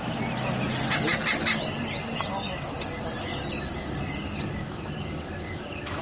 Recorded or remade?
recorded